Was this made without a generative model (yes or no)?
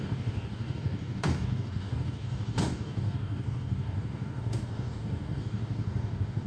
no